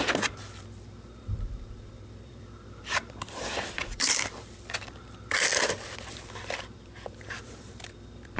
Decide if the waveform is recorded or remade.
remade